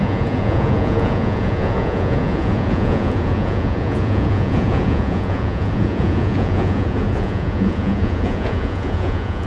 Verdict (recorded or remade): remade